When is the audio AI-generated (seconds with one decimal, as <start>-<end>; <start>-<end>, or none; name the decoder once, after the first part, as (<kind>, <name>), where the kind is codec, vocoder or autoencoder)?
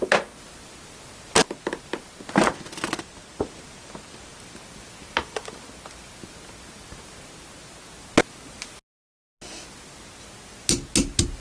none